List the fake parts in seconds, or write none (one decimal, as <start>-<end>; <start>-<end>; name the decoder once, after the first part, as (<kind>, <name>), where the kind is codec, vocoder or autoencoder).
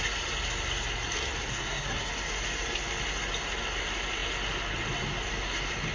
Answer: 1.5-2.1 (codec, SNAC)